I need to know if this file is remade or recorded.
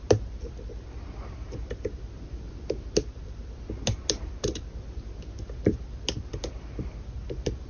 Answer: recorded